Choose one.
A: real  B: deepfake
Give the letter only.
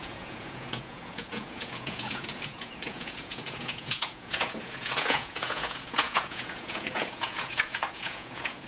B